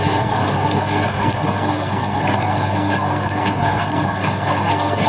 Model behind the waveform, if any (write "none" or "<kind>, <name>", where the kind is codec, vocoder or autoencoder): codec, SNAC